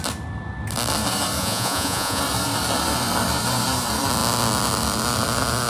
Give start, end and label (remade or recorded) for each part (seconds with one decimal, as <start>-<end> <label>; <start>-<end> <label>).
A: 0.0-1.4 recorded; 1.4-2.2 remade; 2.2-5.7 recorded